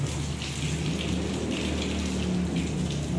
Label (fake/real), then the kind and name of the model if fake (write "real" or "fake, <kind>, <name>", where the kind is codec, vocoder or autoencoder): real